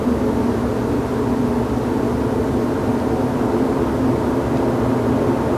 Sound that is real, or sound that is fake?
real